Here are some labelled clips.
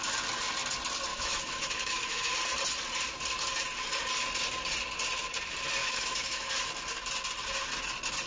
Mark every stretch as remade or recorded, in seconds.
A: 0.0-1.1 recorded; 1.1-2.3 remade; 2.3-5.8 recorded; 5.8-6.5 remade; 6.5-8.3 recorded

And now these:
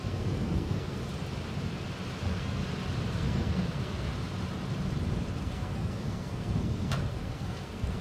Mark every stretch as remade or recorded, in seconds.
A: 0.0-1.0 remade; 1.0-2.2 recorded; 2.2-2.6 remade; 2.6-3.1 recorded; 3.1-4.1 remade; 4.1-5.4 recorded; 5.4-8.0 remade

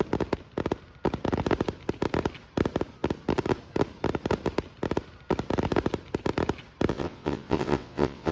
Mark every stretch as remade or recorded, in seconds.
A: 0.0-6.9 recorded; 6.9-8.3 remade

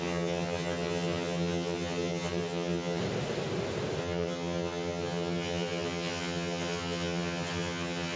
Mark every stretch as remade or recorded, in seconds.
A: 0.0-3.0 remade; 3.0-4.0 recorded; 4.0-8.2 remade

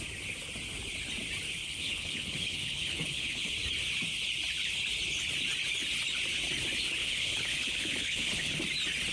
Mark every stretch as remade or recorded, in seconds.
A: 0.0-1.6 recorded; 1.6-3.5 remade; 3.5-7.0 recorded; 7.0-8.6 remade; 8.6-9.1 recorded